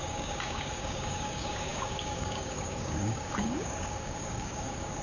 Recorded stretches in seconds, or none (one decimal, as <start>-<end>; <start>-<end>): none

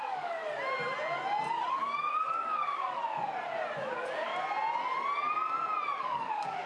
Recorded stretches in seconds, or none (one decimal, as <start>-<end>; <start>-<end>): 0.4-1.7; 3.0-3.9; 4.3-6.0

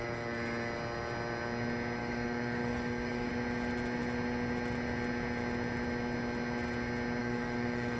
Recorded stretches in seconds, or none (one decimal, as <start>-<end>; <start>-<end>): 0.0-2.0; 3.3-7.2

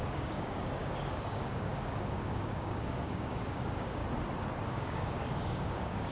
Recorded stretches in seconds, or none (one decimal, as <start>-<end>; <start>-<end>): 4.0-4.7

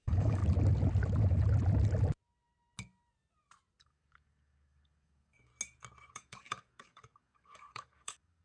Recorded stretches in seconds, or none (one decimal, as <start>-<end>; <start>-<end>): 0.4-3.8; 5.5-6.1

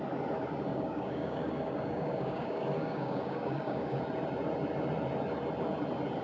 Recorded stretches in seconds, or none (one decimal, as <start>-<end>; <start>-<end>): 0.0-0.7; 4.0-6.2

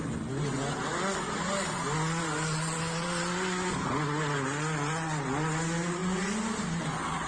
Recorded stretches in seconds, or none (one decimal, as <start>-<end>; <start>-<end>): 0.0-7.3